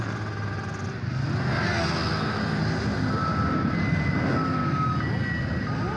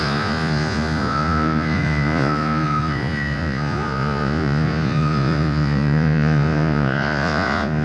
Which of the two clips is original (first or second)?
first